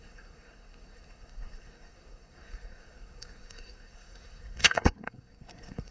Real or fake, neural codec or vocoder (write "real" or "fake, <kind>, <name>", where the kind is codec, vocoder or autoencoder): fake, codec, SNAC